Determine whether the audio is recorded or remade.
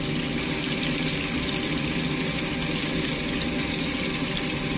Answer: recorded